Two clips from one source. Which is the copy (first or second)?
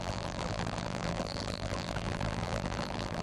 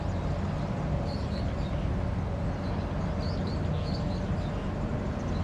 first